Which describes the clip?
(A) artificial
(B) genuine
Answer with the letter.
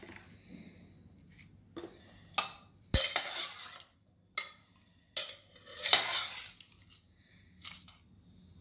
B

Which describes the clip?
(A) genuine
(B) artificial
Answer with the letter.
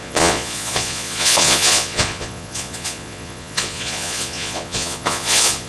B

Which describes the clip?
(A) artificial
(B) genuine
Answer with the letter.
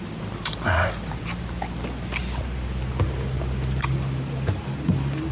A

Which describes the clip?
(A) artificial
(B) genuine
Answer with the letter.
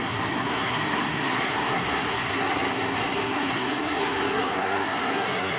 A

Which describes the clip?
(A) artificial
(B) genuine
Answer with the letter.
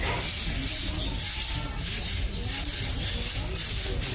B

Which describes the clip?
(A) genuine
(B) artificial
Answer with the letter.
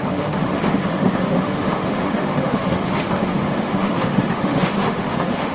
B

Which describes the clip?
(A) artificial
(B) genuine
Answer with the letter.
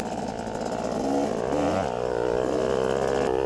B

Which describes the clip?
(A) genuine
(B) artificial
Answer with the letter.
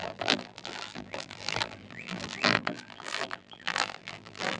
B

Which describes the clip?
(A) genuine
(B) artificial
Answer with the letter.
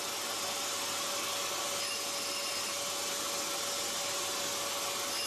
A